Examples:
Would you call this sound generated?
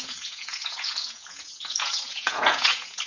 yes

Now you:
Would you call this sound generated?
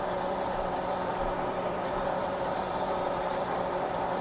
yes